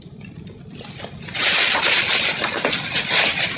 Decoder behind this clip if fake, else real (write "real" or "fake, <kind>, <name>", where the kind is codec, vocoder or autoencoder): real